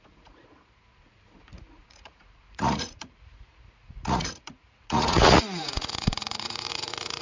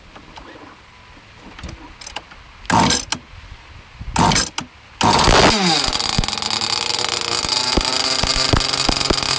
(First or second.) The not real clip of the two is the first